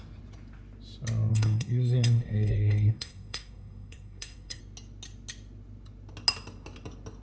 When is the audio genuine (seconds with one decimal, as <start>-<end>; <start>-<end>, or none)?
0.0-1.3; 4.6-7.2

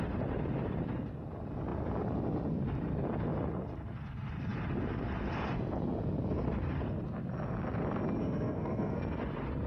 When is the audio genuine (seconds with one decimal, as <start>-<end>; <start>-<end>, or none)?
0.0-8.2; 9.0-9.7

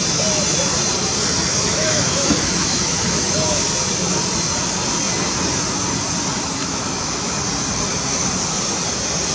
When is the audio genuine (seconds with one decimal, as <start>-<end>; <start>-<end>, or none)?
0.0-1.5; 3.7-6.6; 7.3-9.3